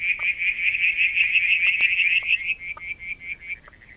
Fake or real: real